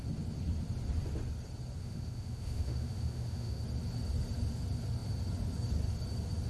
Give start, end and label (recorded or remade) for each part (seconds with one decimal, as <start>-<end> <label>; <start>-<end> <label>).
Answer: 0.0-1.8 recorded; 1.8-3.6 remade; 3.6-6.5 recorded